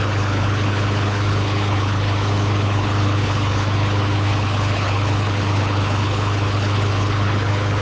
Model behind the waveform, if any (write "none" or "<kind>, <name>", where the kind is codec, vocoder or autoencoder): codec, HILCodec